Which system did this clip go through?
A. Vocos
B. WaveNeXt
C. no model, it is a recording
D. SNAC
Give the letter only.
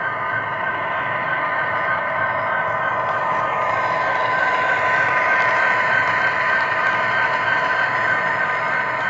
C